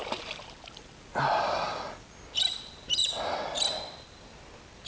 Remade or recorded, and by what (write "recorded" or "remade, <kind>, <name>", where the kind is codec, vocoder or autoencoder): recorded